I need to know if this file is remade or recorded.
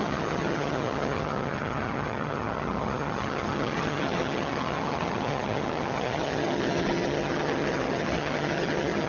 remade